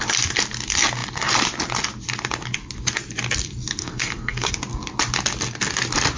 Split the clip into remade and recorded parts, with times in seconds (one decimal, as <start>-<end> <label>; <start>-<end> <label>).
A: 0.0-3.8 recorded; 3.8-4.5 remade; 4.5-6.2 recorded